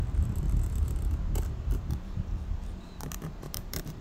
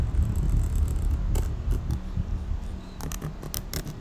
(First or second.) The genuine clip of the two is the second